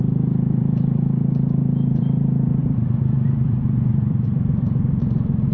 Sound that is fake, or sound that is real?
fake